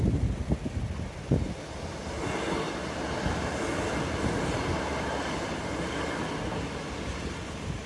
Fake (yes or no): no